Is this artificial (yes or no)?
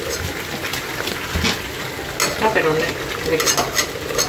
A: no